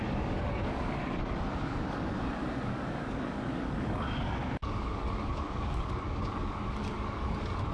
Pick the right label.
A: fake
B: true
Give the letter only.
A